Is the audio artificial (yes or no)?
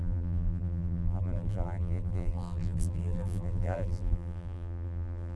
yes